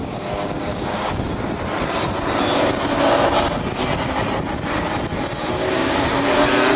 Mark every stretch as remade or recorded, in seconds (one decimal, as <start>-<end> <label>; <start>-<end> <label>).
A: 0.0-1.2 remade; 1.2-5.6 recorded; 5.6-6.3 remade; 6.3-6.8 recorded